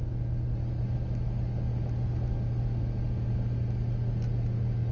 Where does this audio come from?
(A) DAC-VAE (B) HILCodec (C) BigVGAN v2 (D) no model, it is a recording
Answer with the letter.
D